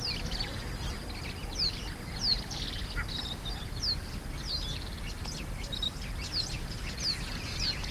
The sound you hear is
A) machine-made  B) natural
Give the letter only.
B